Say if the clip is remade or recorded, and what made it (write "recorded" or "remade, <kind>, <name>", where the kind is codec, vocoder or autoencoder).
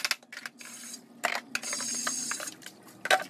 recorded